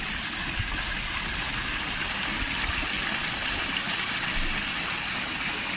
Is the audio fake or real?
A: real